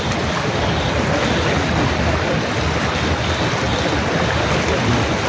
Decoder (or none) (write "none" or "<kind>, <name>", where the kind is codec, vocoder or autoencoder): none